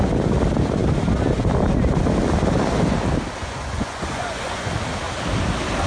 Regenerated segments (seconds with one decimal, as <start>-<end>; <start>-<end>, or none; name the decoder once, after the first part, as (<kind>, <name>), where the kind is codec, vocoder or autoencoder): 3.4-4.7 (vocoder, Vocos)